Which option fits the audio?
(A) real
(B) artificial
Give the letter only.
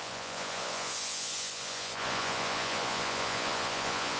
B